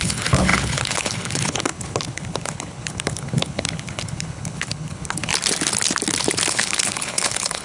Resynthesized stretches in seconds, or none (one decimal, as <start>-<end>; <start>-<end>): 0.0-5.3; 6.5-7.6